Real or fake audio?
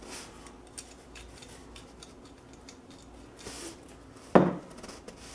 real